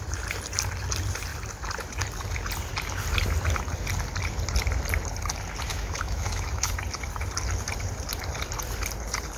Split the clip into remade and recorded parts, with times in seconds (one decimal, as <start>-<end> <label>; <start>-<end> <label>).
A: 0.0-5.7 recorded; 5.7-6.7 remade; 6.7-9.4 recorded